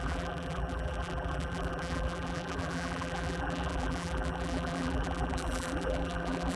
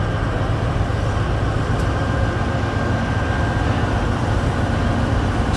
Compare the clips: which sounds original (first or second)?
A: second